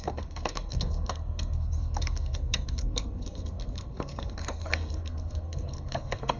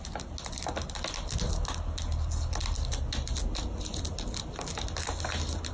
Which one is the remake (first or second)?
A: first